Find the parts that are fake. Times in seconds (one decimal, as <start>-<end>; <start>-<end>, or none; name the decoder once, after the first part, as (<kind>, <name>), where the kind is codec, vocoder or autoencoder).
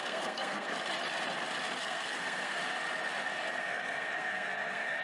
0.0-0.7 (codec, SNAC); 1.8-2.6; 3.6-5.0